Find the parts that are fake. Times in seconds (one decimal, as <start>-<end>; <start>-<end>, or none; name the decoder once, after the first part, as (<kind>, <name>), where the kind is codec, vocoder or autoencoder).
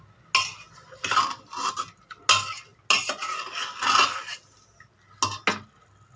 none